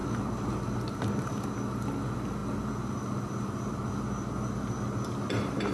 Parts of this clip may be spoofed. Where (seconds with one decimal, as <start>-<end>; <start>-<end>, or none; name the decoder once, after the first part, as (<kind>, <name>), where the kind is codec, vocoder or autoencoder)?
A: none